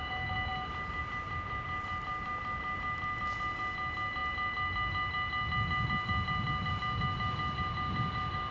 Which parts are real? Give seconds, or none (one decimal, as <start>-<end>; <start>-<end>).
0.0-8.5